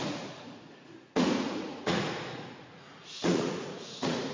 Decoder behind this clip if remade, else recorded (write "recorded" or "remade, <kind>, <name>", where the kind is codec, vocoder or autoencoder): remade, vocoder, Vocos